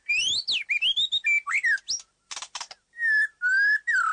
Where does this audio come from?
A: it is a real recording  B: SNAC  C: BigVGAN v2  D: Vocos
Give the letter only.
A